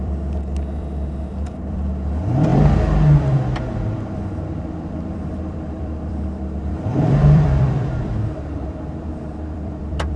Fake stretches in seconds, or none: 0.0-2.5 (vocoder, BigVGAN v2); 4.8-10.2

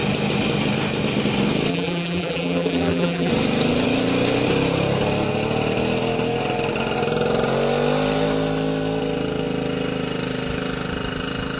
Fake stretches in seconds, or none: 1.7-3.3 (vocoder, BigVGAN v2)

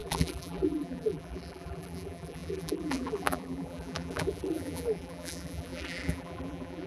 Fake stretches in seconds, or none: 0.0-6.9 (vocoder, BigVGAN v2)

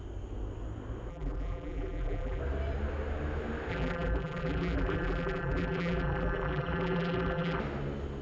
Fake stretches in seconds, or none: 1.1-2.4 (vocoder, BigVGAN v2); 3.7-7.6